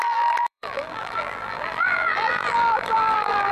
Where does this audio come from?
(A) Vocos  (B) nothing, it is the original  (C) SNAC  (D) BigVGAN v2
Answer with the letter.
D